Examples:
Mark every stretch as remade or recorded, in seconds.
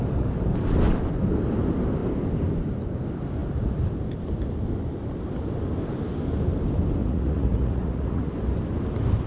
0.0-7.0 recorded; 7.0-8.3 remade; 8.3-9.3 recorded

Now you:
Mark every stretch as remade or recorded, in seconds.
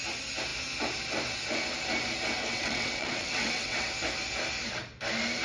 0.0-2.4 recorded; 2.4-3.9 remade; 3.9-5.4 recorded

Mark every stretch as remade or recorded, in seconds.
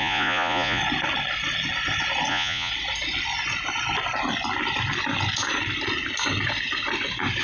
0.0-0.8 remade; 0.8-2.3 recorded; 2.3-2.7 remade; 2.7-7.4 recorded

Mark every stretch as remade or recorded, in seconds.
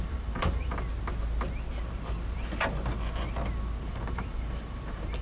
0.0-0.7 remade; 0.7-3.8 recorded; 3.8-5.2 remade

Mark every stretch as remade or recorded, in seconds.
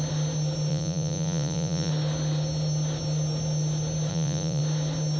0.0-0.7 recorded; 0.7-1.9 remade; 1.9-4.1 recorded; 4.1-4.6 remade; 4.6-5.2 recorded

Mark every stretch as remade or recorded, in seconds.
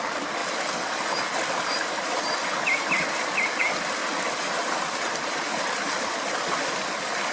0.0-7.3 recorded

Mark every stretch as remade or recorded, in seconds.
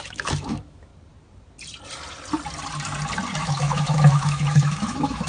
0.0-0.9 remade; 0.9-3.4 recorded; 3.4-5.3 remade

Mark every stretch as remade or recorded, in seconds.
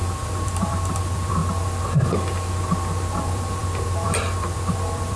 0.0-1.4 remade; 1.4-3.2 recorded; 3.2-5.2 remade